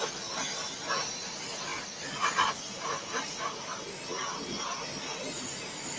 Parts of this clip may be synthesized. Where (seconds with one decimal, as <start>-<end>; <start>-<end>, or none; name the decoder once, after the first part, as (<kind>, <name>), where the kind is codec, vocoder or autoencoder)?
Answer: none